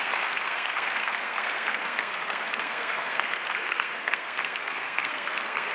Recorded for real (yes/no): no